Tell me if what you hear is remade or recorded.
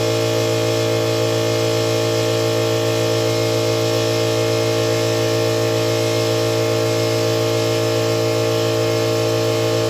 recorded